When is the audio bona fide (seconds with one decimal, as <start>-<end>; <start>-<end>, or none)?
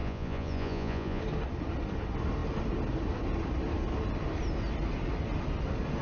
1.2-6.0